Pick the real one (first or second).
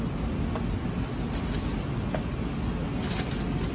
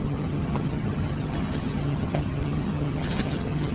first